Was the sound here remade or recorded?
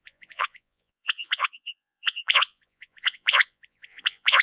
remade